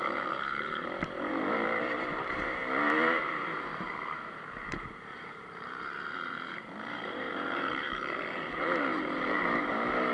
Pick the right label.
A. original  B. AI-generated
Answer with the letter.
B